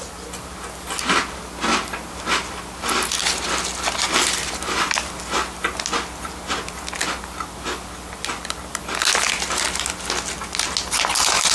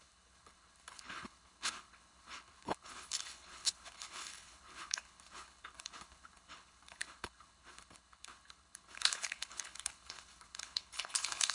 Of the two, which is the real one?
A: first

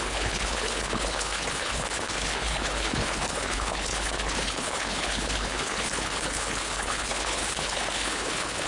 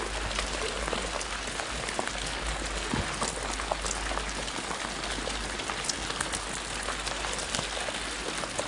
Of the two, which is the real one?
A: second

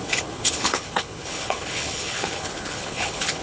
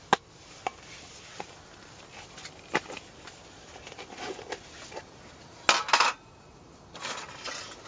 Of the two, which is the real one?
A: second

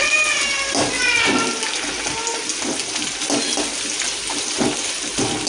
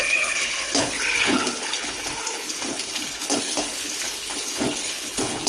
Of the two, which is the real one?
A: first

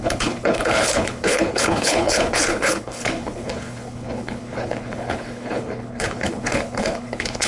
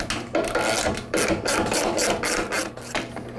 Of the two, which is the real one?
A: second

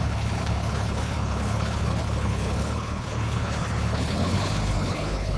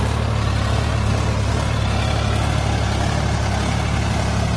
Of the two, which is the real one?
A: second